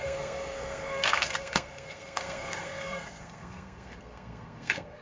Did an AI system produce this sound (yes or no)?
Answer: yes